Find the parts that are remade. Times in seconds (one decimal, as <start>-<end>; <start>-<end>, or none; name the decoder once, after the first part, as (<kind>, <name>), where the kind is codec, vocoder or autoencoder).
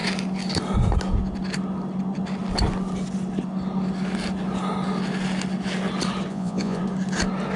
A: 6.3-6.8 (vocoder, Vocos)